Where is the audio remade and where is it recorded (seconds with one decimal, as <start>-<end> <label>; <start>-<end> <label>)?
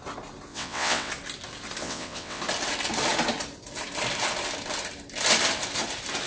0.0-0.5 recorded; 0.5-1.1 remade; 1.1-1.8 recorded; 1.8-2.4 remade; 2.4-6.3 recorded